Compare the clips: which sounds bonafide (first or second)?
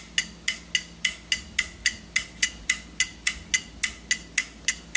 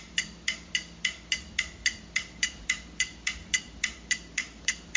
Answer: first